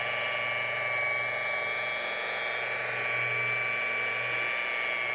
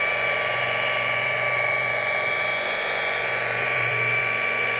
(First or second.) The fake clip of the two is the second